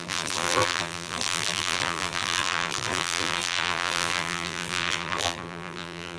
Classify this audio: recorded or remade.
remade